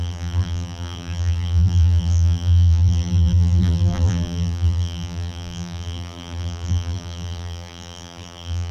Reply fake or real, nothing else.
fake